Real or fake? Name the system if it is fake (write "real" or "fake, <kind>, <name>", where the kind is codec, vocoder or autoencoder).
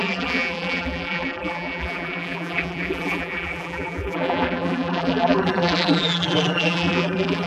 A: fake, vocoder, BigVGAN v2